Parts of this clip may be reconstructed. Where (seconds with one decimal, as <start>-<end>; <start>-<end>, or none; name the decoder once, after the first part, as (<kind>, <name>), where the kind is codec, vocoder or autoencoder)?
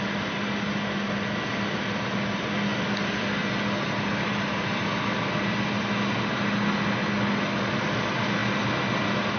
none